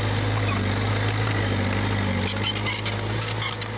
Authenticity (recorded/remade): recorded